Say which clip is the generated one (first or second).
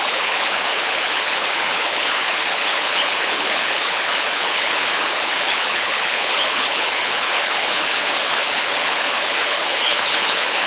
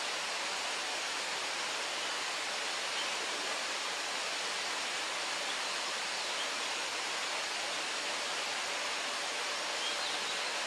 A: first